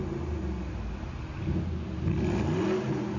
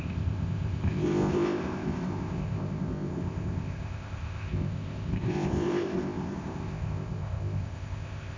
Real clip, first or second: first